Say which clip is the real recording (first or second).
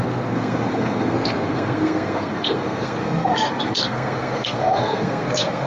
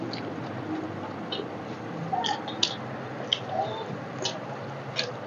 second